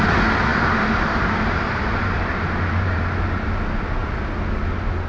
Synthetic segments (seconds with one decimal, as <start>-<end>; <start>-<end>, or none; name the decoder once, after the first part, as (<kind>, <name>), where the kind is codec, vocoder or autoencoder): 0.5-3.0 (vocoder, BigVGAN v2)

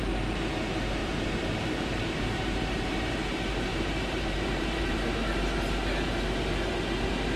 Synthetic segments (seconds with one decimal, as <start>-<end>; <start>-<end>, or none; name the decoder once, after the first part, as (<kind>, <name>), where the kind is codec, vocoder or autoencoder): 1.0-4.9 (vocoder, BigVGAN v2)

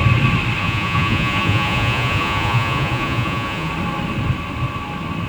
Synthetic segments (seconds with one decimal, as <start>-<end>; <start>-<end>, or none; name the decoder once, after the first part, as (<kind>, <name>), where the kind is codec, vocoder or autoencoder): 0.6-3.7 (vocoder, Vocos)